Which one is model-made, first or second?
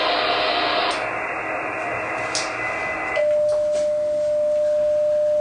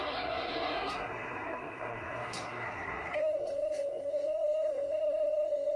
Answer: second